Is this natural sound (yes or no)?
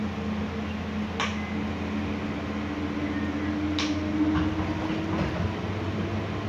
yes